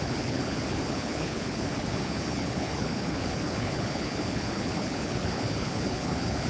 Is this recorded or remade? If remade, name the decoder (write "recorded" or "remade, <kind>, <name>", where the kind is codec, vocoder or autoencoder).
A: remade, codec, HILCodec